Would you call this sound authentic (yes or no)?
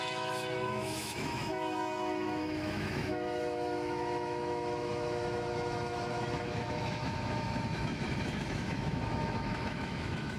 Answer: no